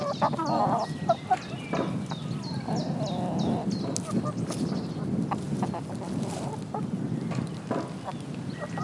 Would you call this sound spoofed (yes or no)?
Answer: no